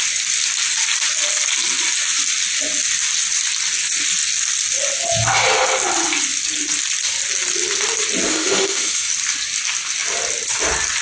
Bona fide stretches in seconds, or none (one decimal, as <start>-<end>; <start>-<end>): 0.0-8.3; 9.1-11.0